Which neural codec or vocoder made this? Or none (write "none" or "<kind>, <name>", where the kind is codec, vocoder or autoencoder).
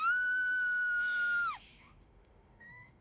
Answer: autoencoder, DAC-VAE